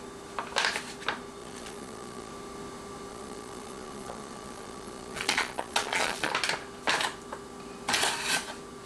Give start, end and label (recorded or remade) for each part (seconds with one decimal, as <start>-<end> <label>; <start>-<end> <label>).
0.0-1.4 recorded; 1.4-2.3 remade; 2.3-3.1 recorded; 3.1-6.3 remade; 6.3-8.9 recorded